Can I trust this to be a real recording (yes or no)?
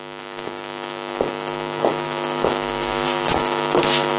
no